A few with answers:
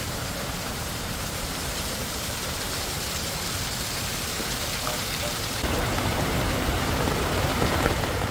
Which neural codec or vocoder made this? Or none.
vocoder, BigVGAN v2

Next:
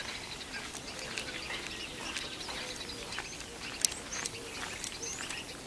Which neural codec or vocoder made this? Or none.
none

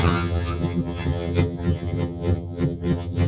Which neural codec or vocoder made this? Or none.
vocoder, HiFi-GAN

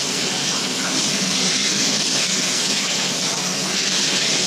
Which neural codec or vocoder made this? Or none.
codec, SNAC